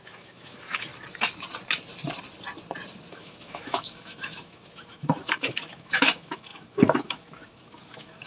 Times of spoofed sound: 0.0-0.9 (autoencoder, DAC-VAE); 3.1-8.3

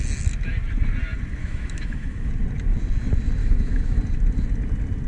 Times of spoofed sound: 1.4-2.3 (autoencoder, DAC-VAE); 3.4-4.0

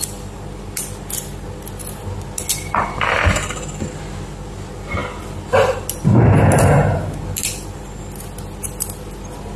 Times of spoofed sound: none

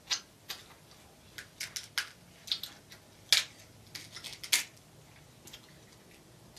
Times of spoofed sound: none